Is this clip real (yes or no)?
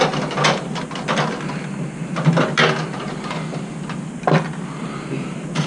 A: yes